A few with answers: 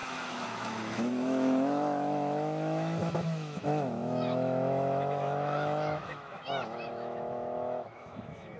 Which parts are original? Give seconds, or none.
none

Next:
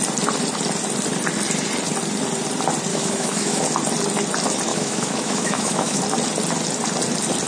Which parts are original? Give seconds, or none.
0.0-2.9; 3.6-4.7; 6.0-7.5

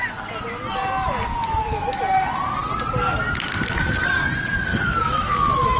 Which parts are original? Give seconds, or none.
0.0-1.4; 2.0-4.7